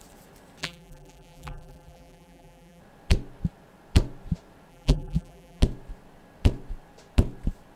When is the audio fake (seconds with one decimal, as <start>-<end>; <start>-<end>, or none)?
0.6-2.8; 4.7-5.6